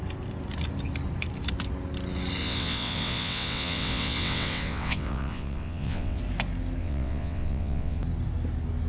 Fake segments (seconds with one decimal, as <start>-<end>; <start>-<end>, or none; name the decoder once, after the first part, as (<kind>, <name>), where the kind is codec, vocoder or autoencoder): 2.4-6.2 (vocoder, WaveNeXt); 6.8-8.0